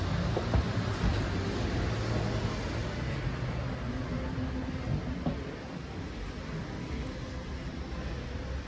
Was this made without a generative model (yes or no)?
yes